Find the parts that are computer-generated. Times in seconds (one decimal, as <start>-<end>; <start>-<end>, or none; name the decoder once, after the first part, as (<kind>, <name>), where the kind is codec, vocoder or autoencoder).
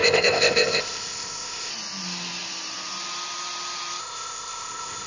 0.0-1.7 (codec, ZipCodec); 4.0-5.1